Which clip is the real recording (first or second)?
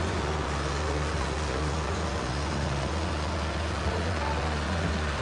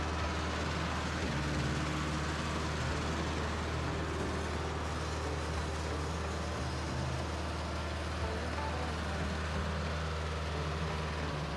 second